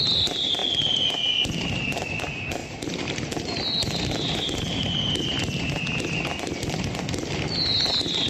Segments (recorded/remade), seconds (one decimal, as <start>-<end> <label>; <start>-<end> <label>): 0.0-8.3 recorded